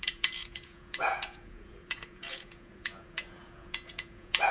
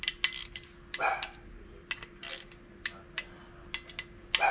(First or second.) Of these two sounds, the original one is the second